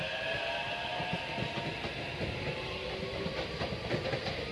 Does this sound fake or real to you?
real